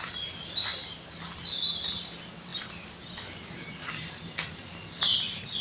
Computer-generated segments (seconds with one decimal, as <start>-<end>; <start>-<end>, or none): none